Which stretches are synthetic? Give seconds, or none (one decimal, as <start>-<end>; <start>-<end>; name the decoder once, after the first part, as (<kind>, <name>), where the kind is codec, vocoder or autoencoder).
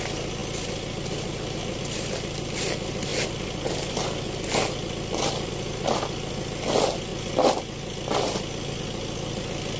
none